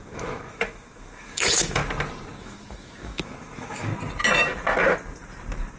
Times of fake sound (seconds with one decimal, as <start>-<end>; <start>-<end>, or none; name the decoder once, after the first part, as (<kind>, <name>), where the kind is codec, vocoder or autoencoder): 0.0-1.8 (autoencoder, DAC-VAE); 2.4-3.9